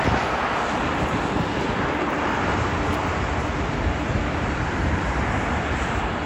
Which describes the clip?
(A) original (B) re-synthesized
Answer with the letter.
A